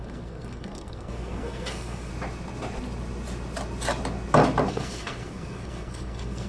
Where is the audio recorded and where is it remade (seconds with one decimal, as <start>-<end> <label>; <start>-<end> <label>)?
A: 0.0-2.1 remade; 2.1-4.7 recorded; 4.7-6.5 remade